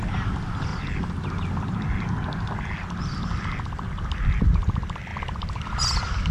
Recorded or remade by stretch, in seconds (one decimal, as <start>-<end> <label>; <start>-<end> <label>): 0.0-6.3 recorded